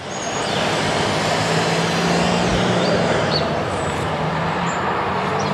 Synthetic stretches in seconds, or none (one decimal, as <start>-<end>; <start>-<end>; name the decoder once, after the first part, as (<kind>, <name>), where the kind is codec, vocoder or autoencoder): 2.5-5.1 (vocoder, BigVGAN v2)